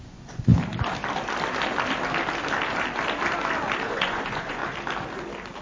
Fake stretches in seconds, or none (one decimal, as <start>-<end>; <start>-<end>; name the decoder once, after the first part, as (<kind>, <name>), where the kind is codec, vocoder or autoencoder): 0.0-0.5 (vocoder, Vocos); 3.9-4.6